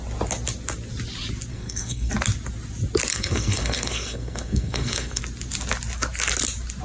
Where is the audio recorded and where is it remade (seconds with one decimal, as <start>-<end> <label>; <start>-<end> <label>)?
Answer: 0.0-1.5 recorded; 1.5-2.1 remade; 2.1-3.1 recorded; 3.1-5.2 remade; 5.2-6.8 recorded